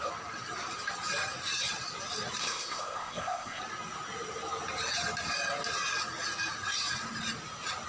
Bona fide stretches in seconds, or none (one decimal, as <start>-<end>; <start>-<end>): 0.0-2.4; 3.6-7.9